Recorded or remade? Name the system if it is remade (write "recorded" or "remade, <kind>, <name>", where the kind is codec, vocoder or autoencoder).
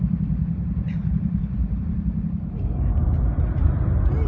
remade, vocoder, BigVGAN v2